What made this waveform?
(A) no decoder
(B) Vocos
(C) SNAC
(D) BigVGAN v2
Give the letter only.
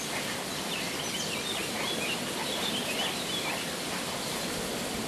A